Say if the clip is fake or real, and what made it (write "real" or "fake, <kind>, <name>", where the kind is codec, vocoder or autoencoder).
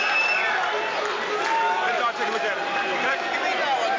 real